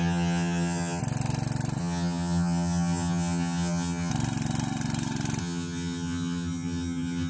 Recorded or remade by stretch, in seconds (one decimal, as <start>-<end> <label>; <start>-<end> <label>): 0.0-1.0 remade; 1.0-1.8 recorded; 1.8-4.1 remade; 4.1-5.4 recorded; 5.4-7.3 remade